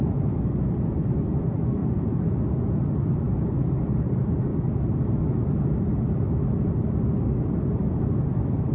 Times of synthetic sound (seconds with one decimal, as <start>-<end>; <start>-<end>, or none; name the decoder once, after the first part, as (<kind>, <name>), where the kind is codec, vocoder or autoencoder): 0.0-1.8 (vocoder, BigVGAN v2); 2.7-4.5; 8.2-8.7